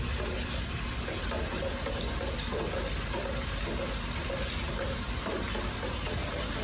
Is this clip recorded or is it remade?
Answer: recorded